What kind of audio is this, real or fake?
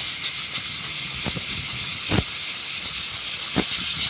real